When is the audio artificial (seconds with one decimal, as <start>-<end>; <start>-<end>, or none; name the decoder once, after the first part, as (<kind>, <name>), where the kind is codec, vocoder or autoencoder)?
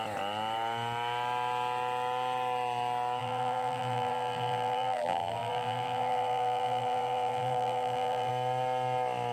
3.2-8.3 (vocoder, BigVGAN v2)